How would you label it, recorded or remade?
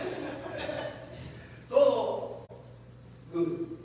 remade